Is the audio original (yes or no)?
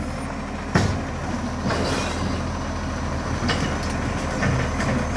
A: yes